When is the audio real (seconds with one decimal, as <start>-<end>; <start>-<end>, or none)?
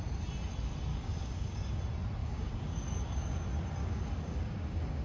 0.0-0.9; 1.8-2.2; 3.4-3.8